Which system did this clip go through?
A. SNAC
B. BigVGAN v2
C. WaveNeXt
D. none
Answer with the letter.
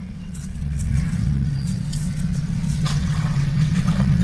C